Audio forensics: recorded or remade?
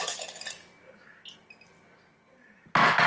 recorded